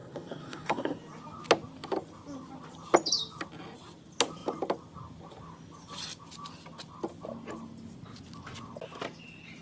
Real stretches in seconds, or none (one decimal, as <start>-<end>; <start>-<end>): 1.0-9.6